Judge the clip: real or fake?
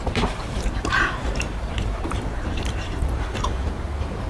fake